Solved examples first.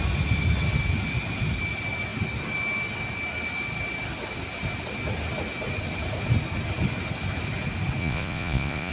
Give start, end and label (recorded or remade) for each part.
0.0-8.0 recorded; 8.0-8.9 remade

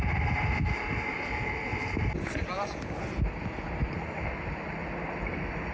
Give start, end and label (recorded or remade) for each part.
0.0-5.7 recorded

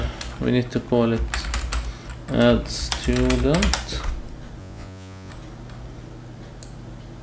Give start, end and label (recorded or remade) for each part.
0.0-4.6 recorded; 4.6-5.3 remade; 5.3-7.2 recorded

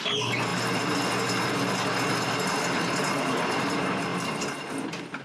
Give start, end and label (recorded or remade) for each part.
0.0-5.2 recorded

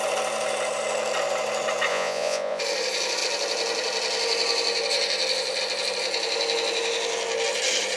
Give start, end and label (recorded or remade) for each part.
0.0-1.9 recorded; 1.9-2.6 remade; 2.6-8.0 recorded

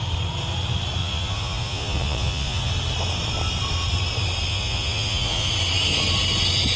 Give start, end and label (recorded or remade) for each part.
0.0-1.0 recorded; 1.0-2.7 remade; 2.7-4.5 recorded; 4.5-5.5 remade; 5.5-6.8 recorded

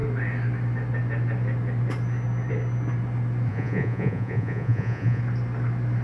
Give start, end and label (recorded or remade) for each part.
0.0-3.5 recorded; 3.5-5.2 remade; 5.2-6.0 recorded

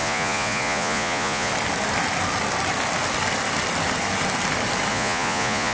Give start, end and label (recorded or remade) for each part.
0.0-1.5 remade; 1.5-4.9 recorded; 4.9-5.7 remade